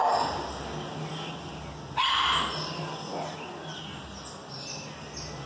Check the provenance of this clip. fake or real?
real